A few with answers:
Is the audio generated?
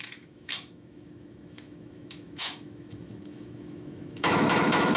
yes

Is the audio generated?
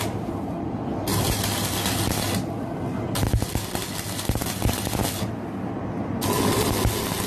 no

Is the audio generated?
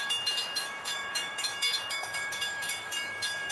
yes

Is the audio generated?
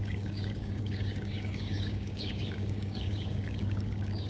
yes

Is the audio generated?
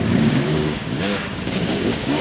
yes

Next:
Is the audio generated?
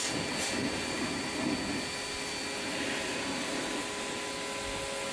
no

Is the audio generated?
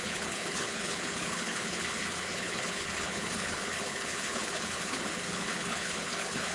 yes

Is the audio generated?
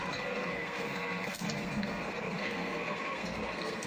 yes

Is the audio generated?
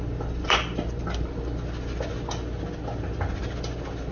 no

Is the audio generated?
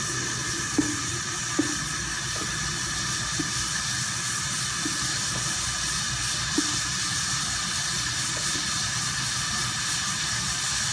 no